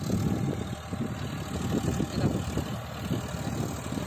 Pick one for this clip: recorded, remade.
recorded